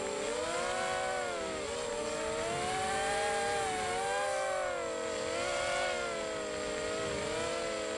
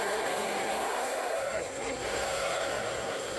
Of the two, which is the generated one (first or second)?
second